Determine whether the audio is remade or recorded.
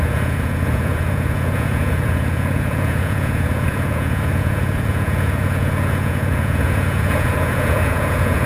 remade